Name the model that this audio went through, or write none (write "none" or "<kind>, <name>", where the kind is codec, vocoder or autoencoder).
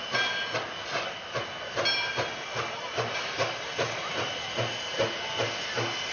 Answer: none